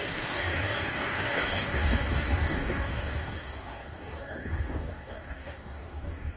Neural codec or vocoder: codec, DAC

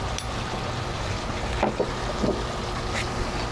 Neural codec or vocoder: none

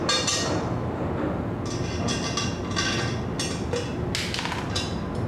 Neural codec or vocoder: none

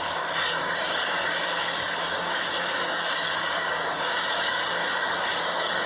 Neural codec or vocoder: codec, DAC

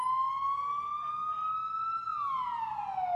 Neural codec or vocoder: none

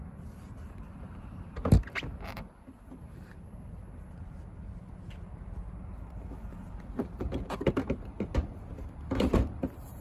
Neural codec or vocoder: vocoder, BigVGAN v2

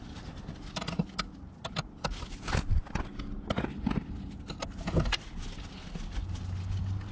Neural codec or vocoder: none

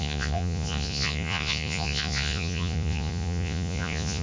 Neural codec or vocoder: vocoder, Vocos